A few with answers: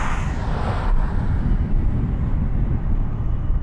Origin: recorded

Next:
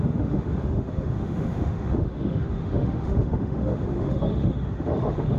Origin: remade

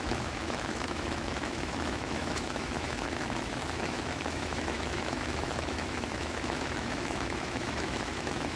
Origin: remade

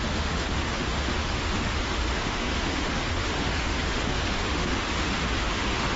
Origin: remade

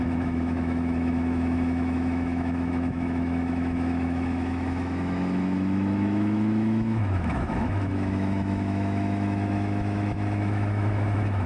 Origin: remade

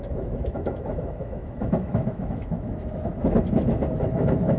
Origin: remade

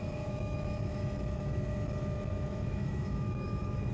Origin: remade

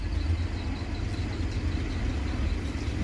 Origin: recorded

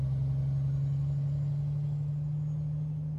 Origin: recorded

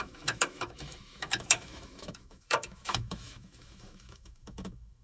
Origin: remade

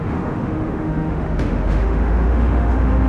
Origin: remade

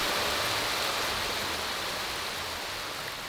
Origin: recorded